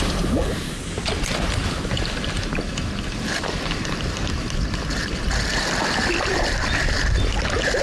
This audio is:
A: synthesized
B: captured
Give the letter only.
B